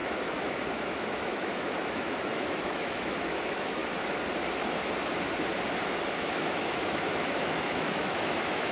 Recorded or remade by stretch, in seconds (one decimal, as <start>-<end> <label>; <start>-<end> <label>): 0.0-3.8 remade; 3.8-6.2 recorded; 6.2-8.7 remade